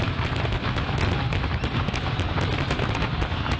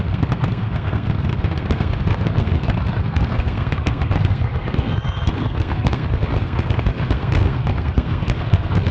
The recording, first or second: first